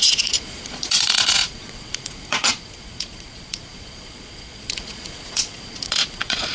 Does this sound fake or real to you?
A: fake